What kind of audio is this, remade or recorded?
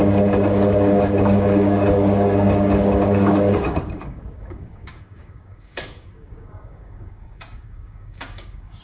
remade